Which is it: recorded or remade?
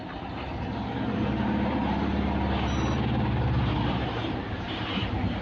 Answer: remade